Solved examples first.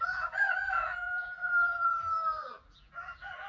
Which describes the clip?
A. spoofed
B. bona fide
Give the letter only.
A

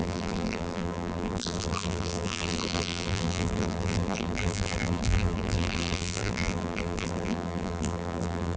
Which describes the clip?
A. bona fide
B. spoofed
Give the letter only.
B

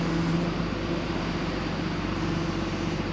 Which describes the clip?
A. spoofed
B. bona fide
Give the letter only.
A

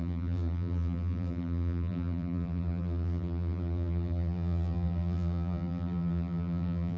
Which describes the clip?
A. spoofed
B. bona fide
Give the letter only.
A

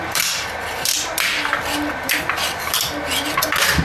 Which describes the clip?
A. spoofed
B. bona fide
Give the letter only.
A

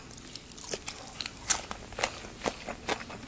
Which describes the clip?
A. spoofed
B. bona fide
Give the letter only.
B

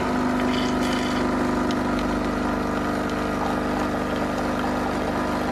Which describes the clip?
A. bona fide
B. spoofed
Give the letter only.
A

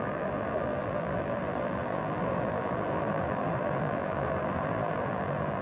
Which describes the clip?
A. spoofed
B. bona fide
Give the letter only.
A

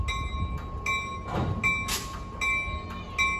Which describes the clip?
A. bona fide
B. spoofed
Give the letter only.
A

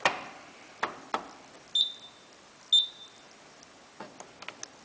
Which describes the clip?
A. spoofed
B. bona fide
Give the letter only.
B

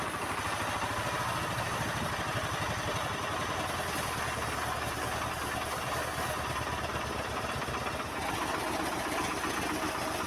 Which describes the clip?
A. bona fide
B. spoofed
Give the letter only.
A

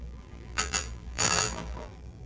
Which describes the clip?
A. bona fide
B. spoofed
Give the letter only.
B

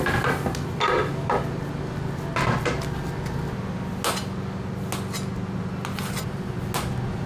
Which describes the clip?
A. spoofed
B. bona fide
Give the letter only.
B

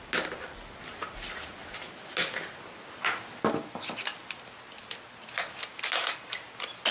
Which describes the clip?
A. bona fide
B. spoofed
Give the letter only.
A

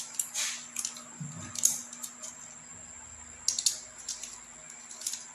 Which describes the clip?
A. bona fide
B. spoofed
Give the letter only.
A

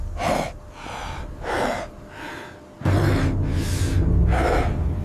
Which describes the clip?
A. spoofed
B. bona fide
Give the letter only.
B